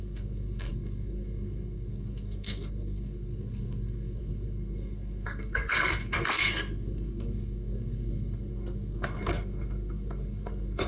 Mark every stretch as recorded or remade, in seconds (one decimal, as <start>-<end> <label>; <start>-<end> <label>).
0.0-10.9 remade